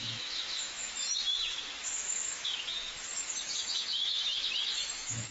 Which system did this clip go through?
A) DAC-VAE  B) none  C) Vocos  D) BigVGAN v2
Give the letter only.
A